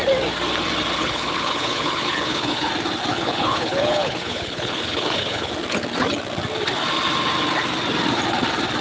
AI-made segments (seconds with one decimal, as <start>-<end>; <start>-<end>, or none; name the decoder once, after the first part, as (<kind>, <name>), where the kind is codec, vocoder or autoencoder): 1.0-2.7 (codec, HILCodec); 3.1-5.5